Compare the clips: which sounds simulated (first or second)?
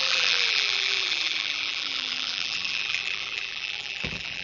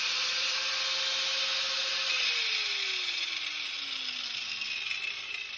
first